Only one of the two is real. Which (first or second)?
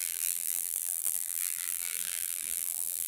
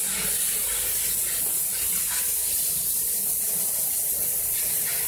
second